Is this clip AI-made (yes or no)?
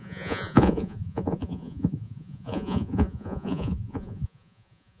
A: yes